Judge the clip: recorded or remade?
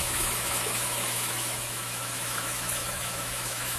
remade